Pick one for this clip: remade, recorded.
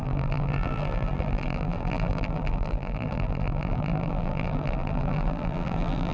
remade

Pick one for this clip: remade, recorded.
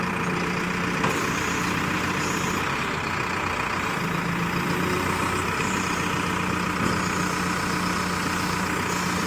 recorded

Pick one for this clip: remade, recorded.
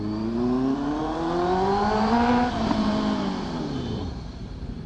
remade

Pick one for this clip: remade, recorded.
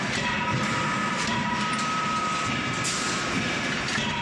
remade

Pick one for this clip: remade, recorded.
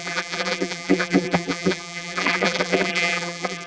remade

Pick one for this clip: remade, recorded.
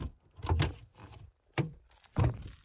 remade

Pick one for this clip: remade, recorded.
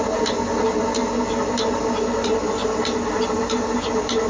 recorded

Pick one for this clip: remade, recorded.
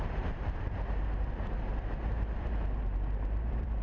remade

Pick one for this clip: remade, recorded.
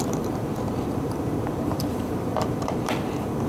remade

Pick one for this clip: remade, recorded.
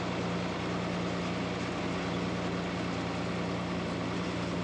recorded